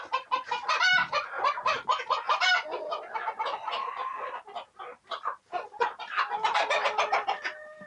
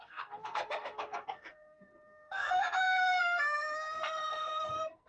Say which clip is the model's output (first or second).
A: second